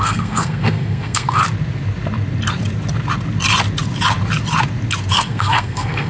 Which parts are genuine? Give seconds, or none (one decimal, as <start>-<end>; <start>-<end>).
1.4-5.1